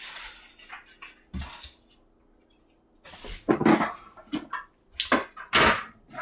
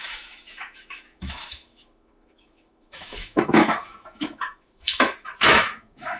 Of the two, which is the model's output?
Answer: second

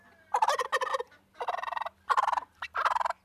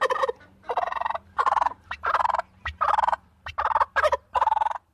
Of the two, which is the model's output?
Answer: second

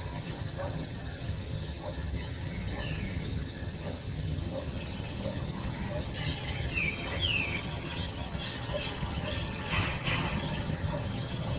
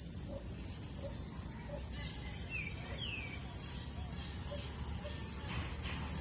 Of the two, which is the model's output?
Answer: first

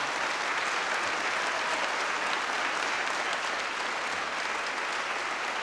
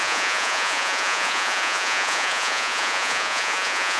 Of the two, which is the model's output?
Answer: second